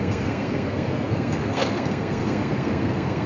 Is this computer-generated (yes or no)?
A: yes